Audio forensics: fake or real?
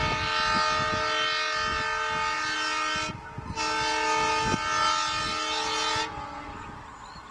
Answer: real